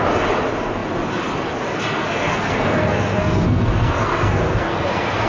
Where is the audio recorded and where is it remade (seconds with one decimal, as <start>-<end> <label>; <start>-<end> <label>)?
0.0-2.0 recorded; 2.0-5.3 remade